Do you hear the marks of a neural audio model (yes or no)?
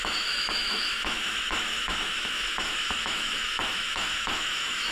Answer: yes